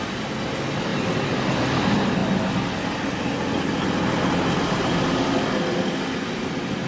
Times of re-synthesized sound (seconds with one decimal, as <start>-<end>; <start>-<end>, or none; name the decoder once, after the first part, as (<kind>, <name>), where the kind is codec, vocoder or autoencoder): none